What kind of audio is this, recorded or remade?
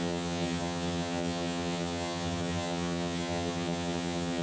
remade